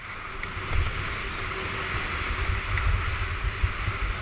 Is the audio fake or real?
real